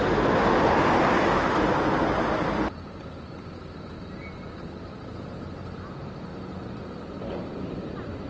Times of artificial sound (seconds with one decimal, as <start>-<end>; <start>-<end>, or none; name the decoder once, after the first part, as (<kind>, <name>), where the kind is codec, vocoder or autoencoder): none